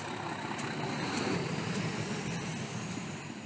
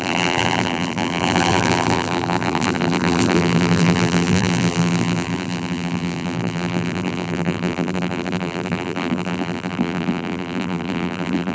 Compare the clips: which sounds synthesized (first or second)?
second